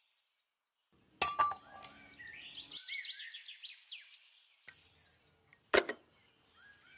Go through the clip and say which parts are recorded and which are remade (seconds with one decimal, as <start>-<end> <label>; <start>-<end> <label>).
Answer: 0.0-7.0 recorded